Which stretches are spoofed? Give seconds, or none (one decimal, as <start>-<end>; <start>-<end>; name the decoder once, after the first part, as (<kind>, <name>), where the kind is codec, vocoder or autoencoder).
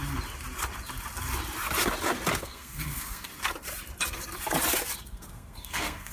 2.4-3.3 (codec, SNAC); 5.0-6.1